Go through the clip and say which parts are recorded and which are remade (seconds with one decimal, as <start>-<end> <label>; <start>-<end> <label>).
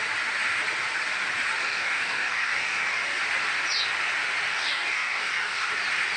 0.0-1.6 recorded; 1.6-3.2 remade; 3.2-4.5 recorded; 4.5-5.7 remade; 5.7-6.2 recorded